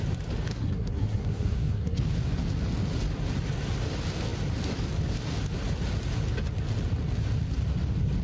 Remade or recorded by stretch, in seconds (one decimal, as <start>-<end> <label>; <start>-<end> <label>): 0.0-0.5 recorded; 0.5-2.0 remade; 2.0-8.2 recorded